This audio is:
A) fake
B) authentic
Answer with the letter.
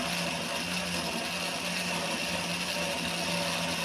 B